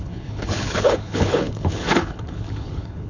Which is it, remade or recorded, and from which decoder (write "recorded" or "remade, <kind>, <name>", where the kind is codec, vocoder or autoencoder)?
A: remade, codec, HILCodec